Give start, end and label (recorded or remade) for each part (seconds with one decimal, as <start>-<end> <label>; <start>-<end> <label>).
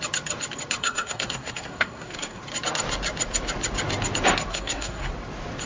0.0-0.8 recorded; 0.8-2.4 remade; 2.4-4.5 recorded; 4.5-5.1 remade; 5.1-5.7 recorded